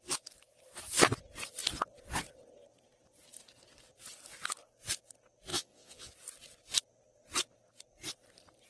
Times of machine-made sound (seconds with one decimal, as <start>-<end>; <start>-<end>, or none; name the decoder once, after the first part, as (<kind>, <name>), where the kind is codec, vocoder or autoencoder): 5.5-6.1 (vocoder, Vocos)